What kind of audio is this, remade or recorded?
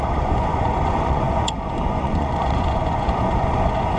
remade